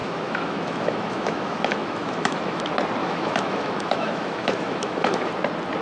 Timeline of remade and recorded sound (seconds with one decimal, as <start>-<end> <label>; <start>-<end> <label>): 0.0-2.6 remade; 2.6-3.0 recorded; 3.0-5.3 remade; 5.3-5.8 recorded